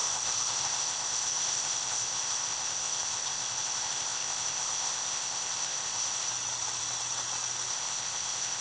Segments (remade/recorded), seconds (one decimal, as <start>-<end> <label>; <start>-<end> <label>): 0.0-6.3 remade; 6.3-7.7 recorded; 7.7-8.6 remade